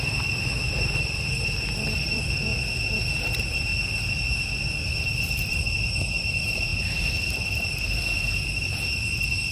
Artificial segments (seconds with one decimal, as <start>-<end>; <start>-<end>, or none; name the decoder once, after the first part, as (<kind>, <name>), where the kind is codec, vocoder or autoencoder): 0.0-2.5 (vocoder, BigVGAN v2); 3.3-3.7; 4.6-9.5